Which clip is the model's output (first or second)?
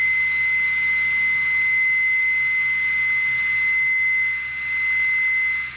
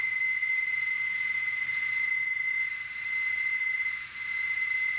second